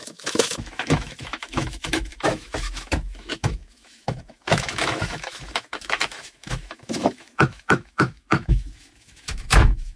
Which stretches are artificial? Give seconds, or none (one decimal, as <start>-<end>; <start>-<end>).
0.0-10.0